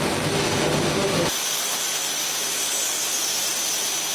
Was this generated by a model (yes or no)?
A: no